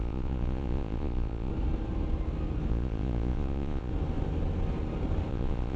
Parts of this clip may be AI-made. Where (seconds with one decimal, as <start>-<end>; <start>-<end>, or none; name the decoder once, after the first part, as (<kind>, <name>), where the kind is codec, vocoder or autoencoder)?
0.0-1.5 (vocoder, Vocos); 2.7-3.9; 5.3-5.8